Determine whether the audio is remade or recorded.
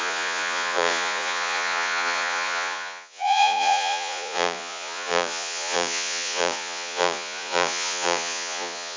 remade